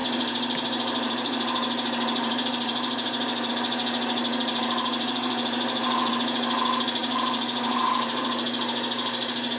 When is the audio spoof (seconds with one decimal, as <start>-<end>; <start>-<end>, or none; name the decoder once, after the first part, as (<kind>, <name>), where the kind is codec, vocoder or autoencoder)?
0.0-3.5 (vocoder, BigVGAN v2); 4.3-6.1; 7.0-8.3